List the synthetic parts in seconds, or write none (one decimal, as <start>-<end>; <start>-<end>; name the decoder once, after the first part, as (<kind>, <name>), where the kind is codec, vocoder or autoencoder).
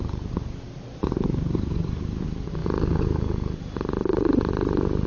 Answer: none